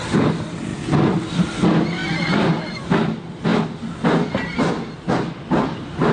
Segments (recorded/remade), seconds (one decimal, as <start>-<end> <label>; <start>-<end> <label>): 0.0-6.1 recorded

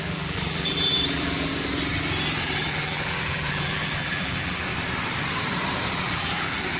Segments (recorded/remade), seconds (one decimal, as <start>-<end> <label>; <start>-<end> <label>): 0.0-1.5 remade; 1.5-2.4 recorded; 2.4-4.7 remade; 4.7-5.9 recorded; 5.9-6.8 remade

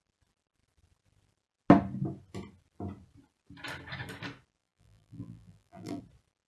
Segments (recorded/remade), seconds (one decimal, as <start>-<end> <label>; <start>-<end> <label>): 0.0-4.6 recorded; 4.6-6.0 remade; 6.0-6.5 recorded

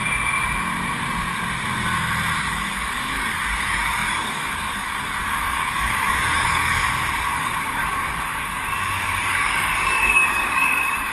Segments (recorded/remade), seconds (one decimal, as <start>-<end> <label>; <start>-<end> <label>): 0.0-2.4 recorded; 2.4-6.8 remade; 6.8-7.3 recorded; 7.3-11.1 remade

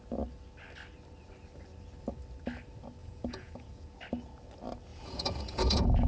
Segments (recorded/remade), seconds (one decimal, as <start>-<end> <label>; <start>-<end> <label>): 0.0-3.0 recorded; 3.0-3.9 remade; 3.9-4.9 recorded; 4.9-6.1 remade